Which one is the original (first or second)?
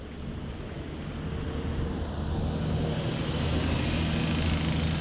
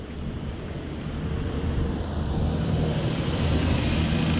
first